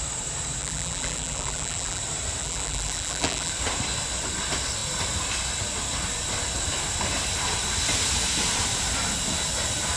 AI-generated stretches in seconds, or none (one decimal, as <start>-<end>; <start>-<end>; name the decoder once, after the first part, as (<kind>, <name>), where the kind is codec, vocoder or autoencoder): 0.6-2.0 (vocoder, BigVGAN v2); 2.4-3.5